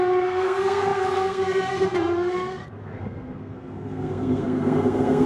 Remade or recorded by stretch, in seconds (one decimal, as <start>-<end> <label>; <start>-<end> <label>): 0.0-5.3 remade